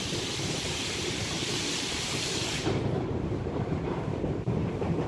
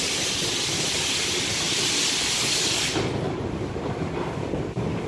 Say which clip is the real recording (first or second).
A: second